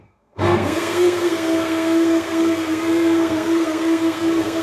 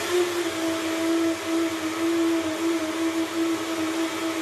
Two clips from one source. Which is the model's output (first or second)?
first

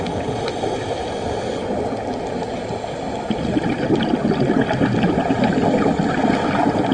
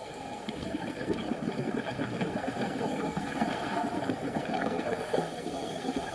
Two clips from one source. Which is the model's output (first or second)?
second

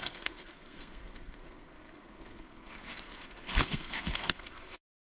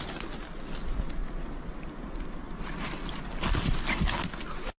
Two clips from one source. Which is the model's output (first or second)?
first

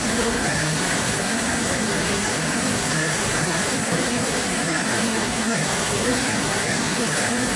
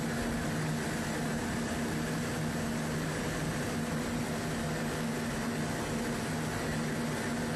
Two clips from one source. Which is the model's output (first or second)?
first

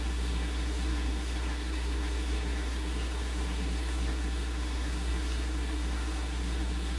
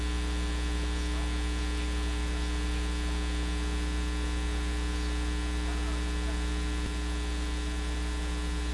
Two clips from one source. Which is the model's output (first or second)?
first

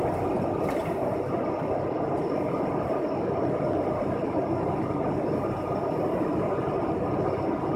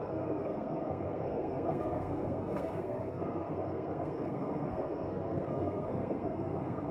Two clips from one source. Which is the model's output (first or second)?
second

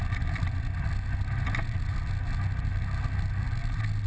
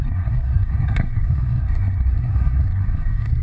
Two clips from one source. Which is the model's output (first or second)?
second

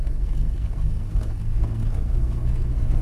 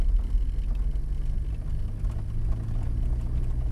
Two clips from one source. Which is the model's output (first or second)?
first